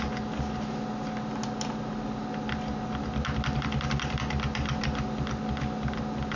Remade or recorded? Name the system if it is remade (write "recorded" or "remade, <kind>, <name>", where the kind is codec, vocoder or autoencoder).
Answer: recorded